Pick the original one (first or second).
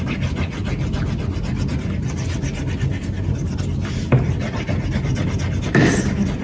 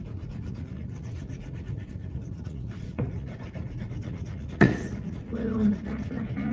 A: first